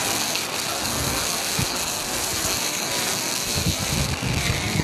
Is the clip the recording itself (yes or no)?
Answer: no